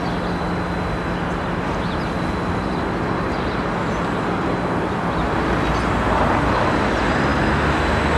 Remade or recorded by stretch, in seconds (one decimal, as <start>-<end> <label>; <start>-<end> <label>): 0.0-8.2 recorded